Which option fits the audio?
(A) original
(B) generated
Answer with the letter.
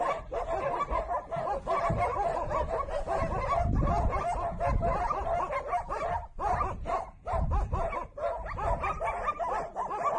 A